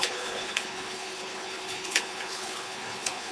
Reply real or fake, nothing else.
fake